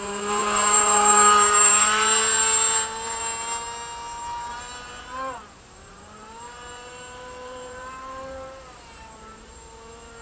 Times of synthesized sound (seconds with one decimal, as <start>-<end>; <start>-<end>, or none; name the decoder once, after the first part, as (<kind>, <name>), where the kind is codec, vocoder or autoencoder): 0.0-3.2 (vocoder, BigVGAN v2); 4.5-10.2